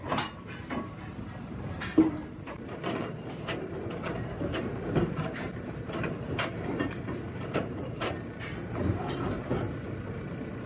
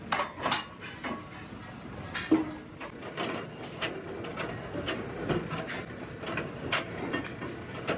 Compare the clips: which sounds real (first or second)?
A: second